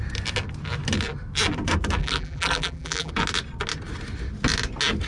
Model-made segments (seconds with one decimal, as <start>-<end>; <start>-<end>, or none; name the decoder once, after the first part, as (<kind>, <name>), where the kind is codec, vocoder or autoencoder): 2.0-3.1 (vocoder, BigVGAN v2)